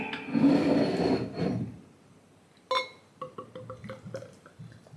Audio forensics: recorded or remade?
recorded